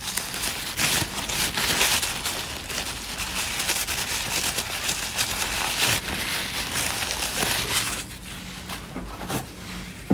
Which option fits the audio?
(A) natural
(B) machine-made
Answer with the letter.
A